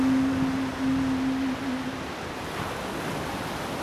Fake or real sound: real